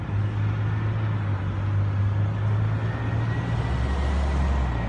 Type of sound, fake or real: real